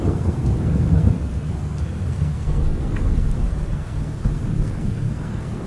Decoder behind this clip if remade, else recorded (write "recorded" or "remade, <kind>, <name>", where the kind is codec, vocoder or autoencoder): remade, codec, SNAC